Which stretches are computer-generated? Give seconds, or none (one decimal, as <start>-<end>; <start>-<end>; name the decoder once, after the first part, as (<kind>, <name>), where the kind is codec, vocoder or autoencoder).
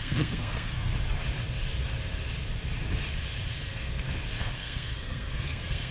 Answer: 0.0-0.9 (codec, SNAC); 4.4-5.9